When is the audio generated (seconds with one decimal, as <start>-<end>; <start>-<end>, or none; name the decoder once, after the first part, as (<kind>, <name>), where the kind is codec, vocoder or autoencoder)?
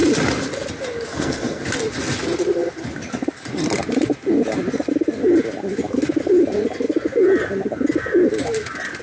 1.1-1.6 (codec, SNAC)